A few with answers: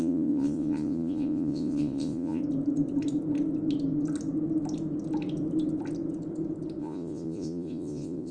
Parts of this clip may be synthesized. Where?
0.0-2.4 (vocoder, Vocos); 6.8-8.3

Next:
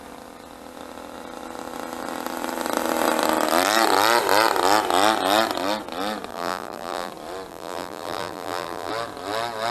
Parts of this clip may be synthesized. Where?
6.3-7.1 (vocoder, BigVGAN v2); 7.5-8.9

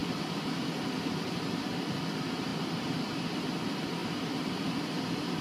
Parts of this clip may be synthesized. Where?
none

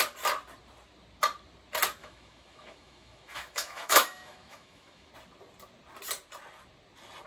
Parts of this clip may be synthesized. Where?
2.0-5.1 (autoencoder, DAC-VAE)

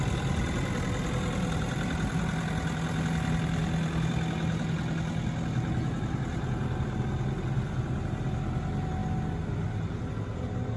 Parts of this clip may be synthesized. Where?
none

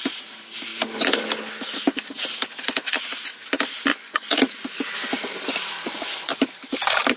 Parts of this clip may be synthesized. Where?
3.9-4.4 (vocoder, Vocos)

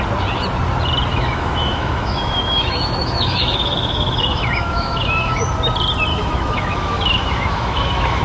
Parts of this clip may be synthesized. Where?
1.1-5.4 (autoencoder, DAC-VAE); 6.1-8.2

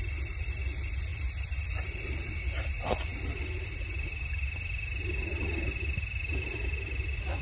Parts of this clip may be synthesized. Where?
none